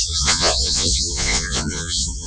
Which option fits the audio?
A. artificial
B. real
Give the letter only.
A